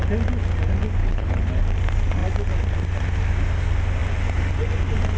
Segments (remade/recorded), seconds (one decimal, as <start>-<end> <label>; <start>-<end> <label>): 0.0-1.0 recorded; 1.0-1.6 remade; 1.6-5.2 recorded